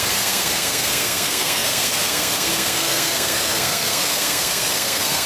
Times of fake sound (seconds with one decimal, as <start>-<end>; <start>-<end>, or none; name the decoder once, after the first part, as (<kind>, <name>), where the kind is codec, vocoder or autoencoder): 0.0-5.3 (codec, SNAC)